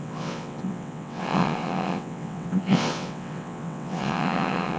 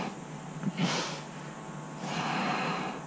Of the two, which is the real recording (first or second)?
second